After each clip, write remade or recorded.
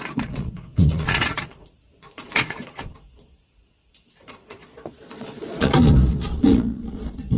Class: remade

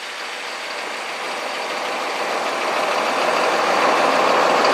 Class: recorded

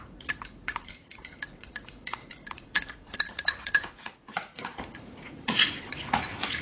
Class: remade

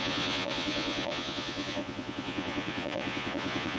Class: remade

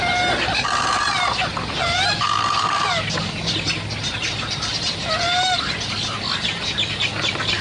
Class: recorded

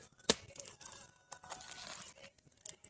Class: recorded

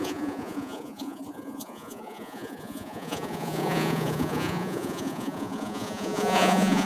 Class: remade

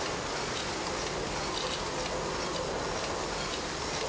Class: recorded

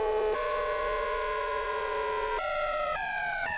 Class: remade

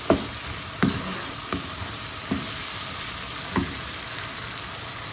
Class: recorded